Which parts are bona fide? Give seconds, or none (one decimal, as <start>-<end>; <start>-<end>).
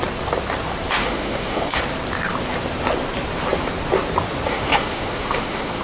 0.0-1.0; 1.8-4.5